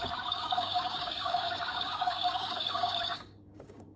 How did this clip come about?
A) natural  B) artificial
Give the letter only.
B